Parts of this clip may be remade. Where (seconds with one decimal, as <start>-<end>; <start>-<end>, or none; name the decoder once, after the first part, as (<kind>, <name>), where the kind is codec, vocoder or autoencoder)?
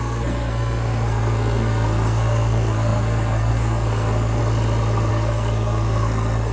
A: 0.0-4.4 (codec, SNAC); 5.1-6.5